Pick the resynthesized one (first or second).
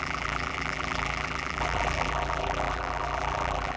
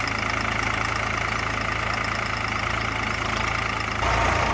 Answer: first